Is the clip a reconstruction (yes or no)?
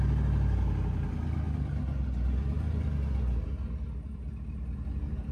no